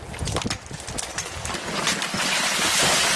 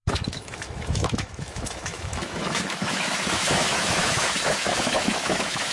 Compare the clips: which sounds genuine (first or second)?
first